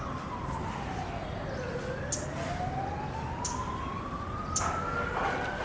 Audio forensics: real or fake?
real